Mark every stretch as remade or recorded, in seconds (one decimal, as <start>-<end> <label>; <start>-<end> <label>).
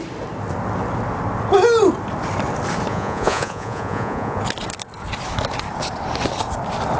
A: 0.0-2.9 recorded; 2.9-4.4 remade; 4.4-7.0 recorded